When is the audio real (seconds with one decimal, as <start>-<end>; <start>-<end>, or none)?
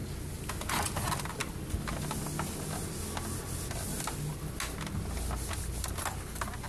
0.0-6.7